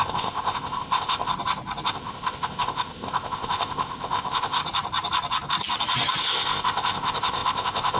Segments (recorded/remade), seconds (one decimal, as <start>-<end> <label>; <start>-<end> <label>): 0.0-1.3 remade; 1.3-1.9 recorded; 1.9-4.6 remade; 4.6-6.2 recorded; 6.2-8.0 remade